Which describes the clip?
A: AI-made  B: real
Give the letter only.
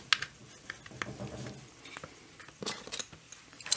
B